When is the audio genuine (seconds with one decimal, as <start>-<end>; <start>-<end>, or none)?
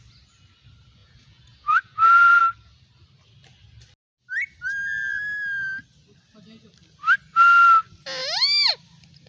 0.0-1.0; 2.4-9.3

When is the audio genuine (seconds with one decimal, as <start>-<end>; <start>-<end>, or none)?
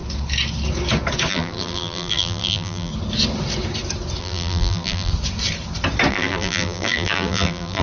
0.0-1.3; 2.9-4.2; 5.1-6.1